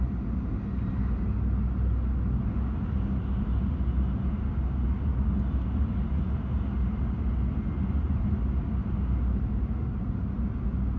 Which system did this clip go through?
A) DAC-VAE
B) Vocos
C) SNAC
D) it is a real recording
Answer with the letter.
D